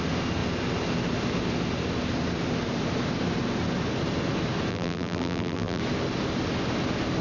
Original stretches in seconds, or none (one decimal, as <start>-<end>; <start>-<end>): 0.0-4.7; 5.8-7.2